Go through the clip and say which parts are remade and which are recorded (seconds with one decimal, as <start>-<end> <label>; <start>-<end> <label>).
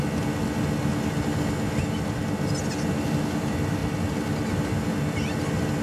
0.0-5.8 recorded